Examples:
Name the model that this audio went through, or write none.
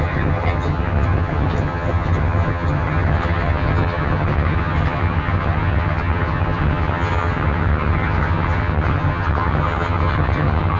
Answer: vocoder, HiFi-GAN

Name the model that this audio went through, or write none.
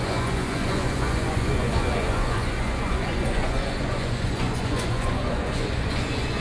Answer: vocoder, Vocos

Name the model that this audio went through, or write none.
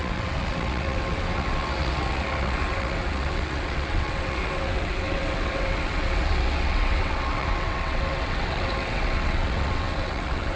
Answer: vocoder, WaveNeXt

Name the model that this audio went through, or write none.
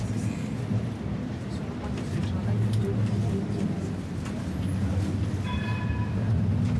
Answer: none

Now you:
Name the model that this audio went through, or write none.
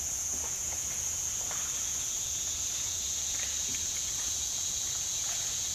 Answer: vocoder, Vocos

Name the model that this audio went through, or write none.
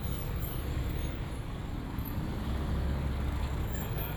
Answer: codec, DAC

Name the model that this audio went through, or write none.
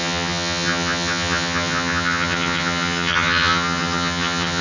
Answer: vocoder, HiFi-GAN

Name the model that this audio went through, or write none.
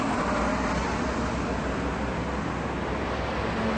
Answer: none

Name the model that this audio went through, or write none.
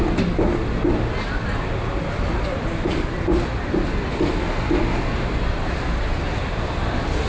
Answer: none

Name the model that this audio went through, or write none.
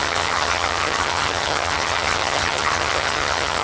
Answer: vocoder, HiFi-GAN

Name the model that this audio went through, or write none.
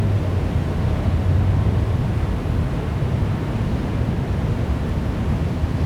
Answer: none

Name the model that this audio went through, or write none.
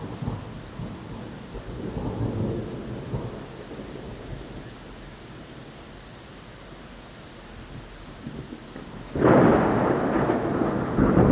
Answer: none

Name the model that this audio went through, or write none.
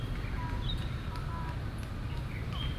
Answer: none